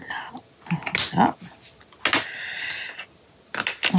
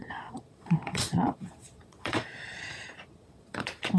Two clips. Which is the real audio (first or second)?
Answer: first